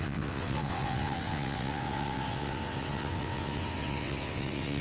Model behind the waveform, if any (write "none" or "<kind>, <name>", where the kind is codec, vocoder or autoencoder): vocoder, WaveNeXt